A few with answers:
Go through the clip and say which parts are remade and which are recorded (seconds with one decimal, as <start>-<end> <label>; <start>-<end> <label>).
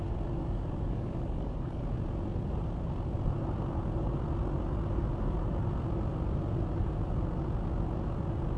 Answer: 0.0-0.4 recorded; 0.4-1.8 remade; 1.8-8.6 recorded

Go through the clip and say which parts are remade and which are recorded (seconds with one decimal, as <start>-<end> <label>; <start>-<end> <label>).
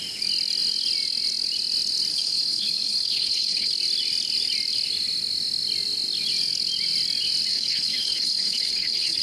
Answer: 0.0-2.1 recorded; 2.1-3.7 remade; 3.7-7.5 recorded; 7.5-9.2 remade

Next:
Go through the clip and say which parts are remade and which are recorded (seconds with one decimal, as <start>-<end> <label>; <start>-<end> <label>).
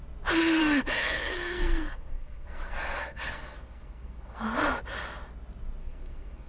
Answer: 0.0-0.6 recorded; 0.6-4.4 remade; 4.4-5.8 recorded; 5.8-6.5 remade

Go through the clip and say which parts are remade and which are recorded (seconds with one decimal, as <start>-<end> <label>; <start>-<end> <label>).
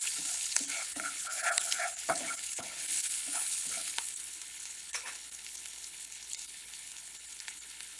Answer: 0.0-8.0 remade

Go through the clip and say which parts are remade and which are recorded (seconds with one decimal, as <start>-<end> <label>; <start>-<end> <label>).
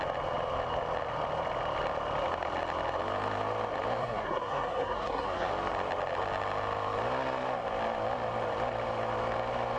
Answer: 0.0-4.0 recorded; 4.0-5.5 remade; 5.5-9.8 recorded